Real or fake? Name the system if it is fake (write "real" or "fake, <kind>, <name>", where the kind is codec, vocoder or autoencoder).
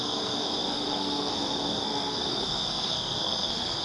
fake, codec, SNAC